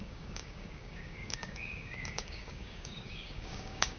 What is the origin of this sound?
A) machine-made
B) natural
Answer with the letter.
A